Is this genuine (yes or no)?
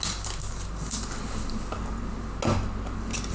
yes